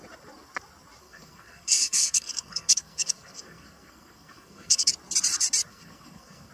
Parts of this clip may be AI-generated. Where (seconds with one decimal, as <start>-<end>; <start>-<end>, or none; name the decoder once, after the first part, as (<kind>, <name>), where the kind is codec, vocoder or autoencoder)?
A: 1.0-4.9 (codec, SNAC); 5.7-6.5